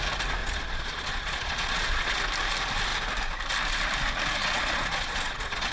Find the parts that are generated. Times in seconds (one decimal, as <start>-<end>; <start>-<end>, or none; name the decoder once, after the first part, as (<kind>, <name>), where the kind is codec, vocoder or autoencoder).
0.4-2.2 (vocoder, Vocos); 4.4-5.7